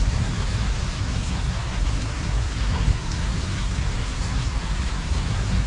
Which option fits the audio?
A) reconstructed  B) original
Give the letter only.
A